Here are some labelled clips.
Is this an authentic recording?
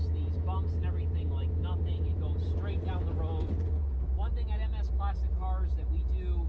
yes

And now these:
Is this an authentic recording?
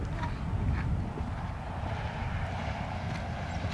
yes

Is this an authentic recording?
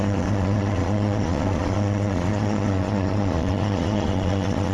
no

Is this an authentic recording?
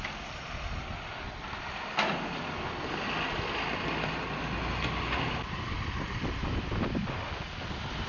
yes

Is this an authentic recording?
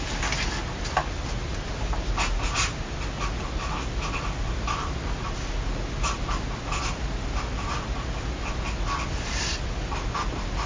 yes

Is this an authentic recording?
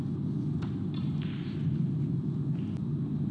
yes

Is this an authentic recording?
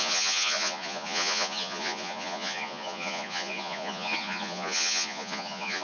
no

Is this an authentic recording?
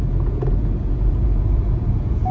no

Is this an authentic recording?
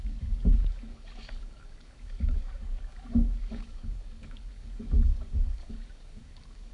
no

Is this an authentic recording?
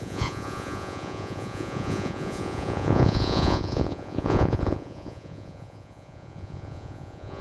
no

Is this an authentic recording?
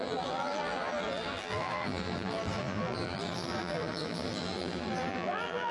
no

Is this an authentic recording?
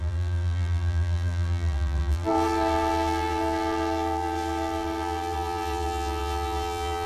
no